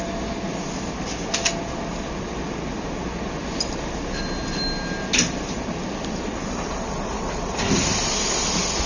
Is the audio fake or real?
real